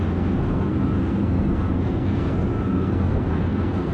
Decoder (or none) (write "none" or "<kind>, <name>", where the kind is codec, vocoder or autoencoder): codec, SNAC